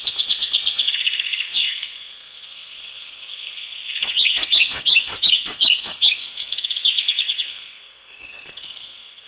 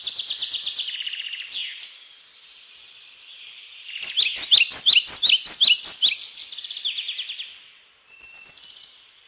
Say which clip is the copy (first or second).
first